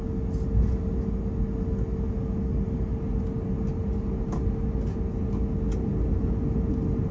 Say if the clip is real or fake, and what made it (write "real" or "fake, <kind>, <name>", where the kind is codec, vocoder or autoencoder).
real